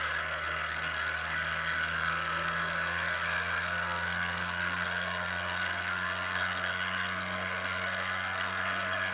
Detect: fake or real fake